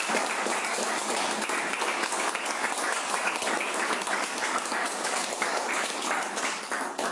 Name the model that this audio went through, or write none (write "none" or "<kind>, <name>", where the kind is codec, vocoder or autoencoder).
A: codec, DAC